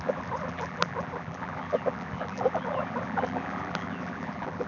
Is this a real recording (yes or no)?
no